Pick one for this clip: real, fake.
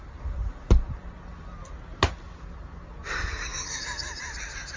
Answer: real